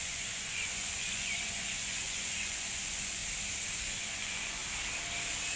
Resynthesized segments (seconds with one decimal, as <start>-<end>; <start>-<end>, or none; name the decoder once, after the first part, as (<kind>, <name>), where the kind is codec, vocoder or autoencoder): 0.0-3.2 (vocoder, Vocos); 3.8-4.6